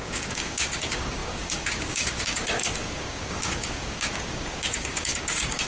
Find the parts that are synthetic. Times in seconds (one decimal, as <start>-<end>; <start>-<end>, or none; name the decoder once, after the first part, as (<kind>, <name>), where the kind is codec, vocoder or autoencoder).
0.0-5.7 (codec, DAC)